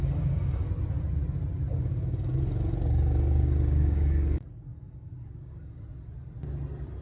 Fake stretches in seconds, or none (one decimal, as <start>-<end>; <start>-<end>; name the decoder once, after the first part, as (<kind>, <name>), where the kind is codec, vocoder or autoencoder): 0.0-0.7 (codec, DAC); 1.7-5.8